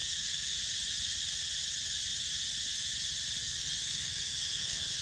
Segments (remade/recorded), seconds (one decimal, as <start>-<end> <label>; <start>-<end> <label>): 0.0-0.6 remade; 0.6-3.4 recorded; 3.4-5.0 remade